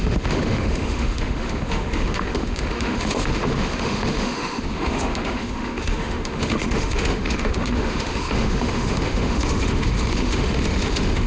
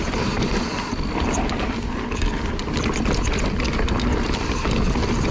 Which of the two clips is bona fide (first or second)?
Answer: second